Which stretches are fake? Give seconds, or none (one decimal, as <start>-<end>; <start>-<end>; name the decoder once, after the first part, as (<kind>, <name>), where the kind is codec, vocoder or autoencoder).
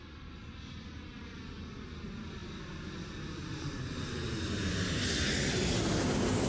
none